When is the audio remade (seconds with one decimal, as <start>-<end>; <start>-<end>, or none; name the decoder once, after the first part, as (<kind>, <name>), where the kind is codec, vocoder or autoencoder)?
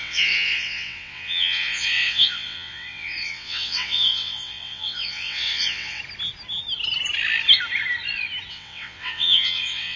0.0-6.0 (vocoder, WaveNeXt); 8.5-10.0